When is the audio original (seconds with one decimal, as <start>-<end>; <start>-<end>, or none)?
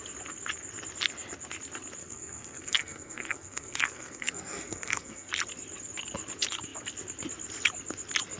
0.0-2.0; 5.3-8.4